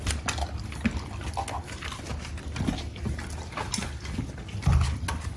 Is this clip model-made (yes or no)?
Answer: no